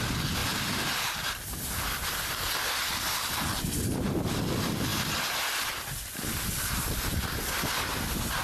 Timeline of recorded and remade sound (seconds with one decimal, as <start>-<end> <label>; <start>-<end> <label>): 0.0-8.4 recorded